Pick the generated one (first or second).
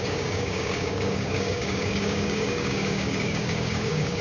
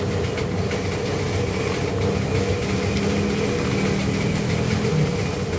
first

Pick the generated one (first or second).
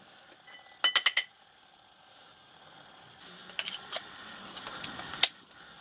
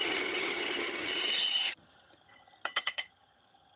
second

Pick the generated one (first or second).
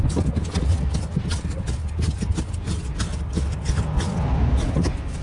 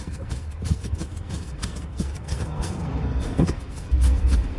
second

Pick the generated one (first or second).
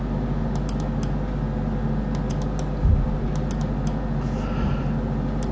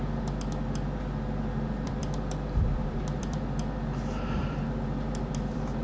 second